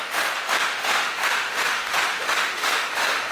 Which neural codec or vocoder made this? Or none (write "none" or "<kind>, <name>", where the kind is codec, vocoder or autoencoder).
autoencoder, DAC-VAE